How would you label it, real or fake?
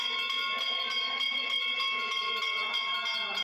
real